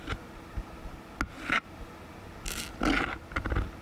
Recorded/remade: recorded